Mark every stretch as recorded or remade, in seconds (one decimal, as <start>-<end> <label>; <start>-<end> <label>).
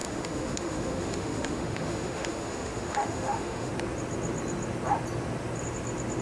0.0-3.7 remade; 3.7-6.2 recorded